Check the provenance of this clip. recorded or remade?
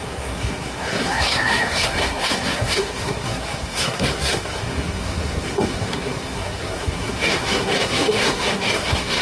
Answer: remade